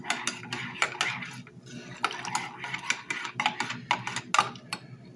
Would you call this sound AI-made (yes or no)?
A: no